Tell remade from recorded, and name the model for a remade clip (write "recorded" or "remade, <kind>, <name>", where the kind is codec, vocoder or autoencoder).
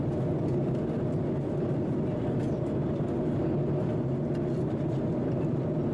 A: recorded